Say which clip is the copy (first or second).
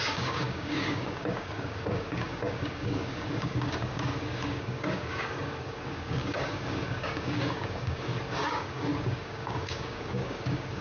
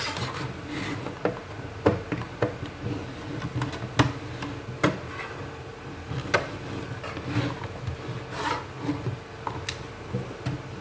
first